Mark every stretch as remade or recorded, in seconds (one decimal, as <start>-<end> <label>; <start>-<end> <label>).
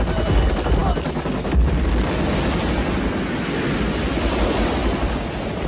0.0-5.7 recorded